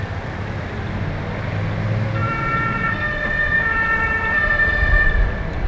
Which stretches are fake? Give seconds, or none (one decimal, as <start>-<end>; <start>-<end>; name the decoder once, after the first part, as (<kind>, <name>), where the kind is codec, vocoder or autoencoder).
2.2-5.7 (vocoder, BigVGAN v2)